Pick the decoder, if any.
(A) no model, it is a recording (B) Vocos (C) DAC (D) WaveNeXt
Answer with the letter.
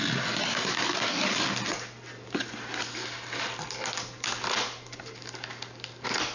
A